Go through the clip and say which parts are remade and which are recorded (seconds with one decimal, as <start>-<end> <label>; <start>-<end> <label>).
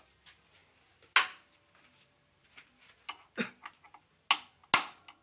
0.0-5.2 recorded